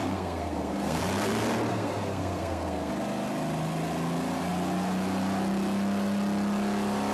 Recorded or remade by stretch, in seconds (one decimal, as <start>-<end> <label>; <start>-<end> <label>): 0.0-1.0 remade; 1.0-1.7 recorded; 1.7-2.9 remade; 2.9-7.1 recorded

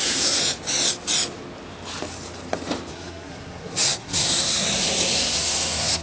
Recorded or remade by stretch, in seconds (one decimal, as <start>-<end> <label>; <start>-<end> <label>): 0.0-0.4 remade; 0.4-2.9 recorded; 2.9-6.0 remade

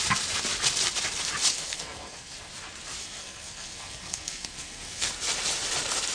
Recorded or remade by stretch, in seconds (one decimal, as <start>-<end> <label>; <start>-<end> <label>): 0.0-1.5 recorded; 1.5-2.5 remade; 2.5-3.0 recorded; 3.0-5.1 remade; 5.1-6.1 recorded

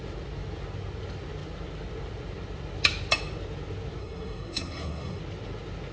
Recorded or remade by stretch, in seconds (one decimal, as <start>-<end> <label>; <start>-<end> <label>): 0.0-4.0 recorded; 4.0-5.2 remade; 5.2-5.9 recorded

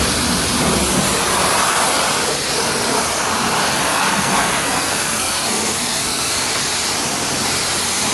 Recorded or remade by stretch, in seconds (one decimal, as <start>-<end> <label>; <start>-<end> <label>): 0.0-3.9 recorded; 3.9-6.6 remade; 6.6-8.1 recorded